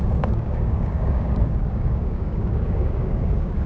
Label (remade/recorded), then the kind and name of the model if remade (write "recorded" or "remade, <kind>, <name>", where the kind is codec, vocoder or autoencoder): remade, codec, DAC